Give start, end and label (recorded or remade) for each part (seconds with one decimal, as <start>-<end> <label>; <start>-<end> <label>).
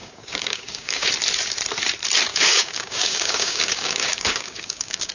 0.0-1.1 remade; 1.1-2.3 recorded; 2.3-5.1 remade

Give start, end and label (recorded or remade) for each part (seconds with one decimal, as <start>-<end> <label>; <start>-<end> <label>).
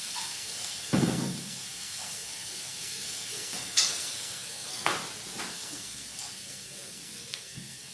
0.0-4.9 remade; 4.9-5.5 recorded; 5.5-7.9 remade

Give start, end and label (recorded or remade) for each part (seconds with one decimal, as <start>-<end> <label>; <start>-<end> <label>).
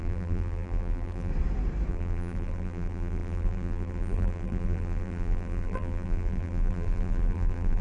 0.0-1.3 remade; 1.3-1.9 recorded; 1.9-7.8 remade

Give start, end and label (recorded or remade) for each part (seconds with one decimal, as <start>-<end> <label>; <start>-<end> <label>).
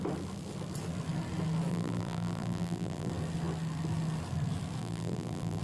0.0-1.7 recorded; 1.7-3.1 remade; 3.1-4.8 recorded; 4.8-5.6 remade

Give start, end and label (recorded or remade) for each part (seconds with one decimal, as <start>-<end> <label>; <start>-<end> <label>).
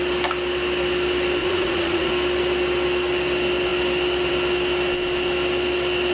0.0-1.4 recorded; 1.4-2.1 remade; 2.1-6.1 recorded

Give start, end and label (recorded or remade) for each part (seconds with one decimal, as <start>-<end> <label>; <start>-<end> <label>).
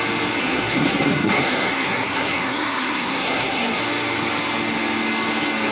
0.0-0.4 recorded; 0.4-3.8 remade; 3.8-5.7 recorded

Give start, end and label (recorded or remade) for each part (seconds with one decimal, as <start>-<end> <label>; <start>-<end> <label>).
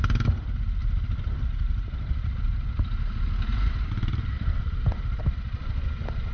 0.0-0.8 recorded; 0.8-2.3 remade; 2.3-3.5 recorded; 3.5-5.2 remade; 5.2-6.3 recorded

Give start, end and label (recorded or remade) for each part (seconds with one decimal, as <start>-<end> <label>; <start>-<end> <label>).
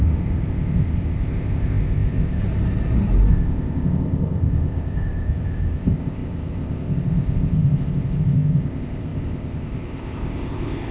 0.0-2.4 remade; 2.4-3.3 recorded; 3.3-10.9 remade